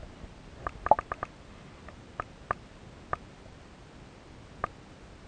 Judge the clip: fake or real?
real